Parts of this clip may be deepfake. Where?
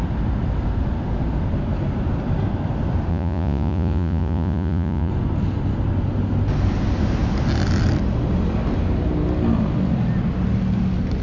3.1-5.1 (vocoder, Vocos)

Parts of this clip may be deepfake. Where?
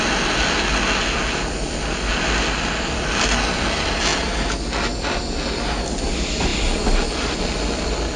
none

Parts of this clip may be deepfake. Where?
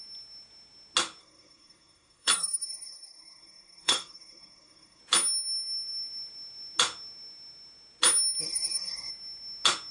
1.2-5.0 (codec, SNAC); 8.4-9.1